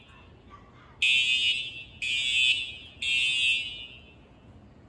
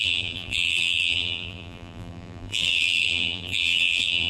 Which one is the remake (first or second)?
second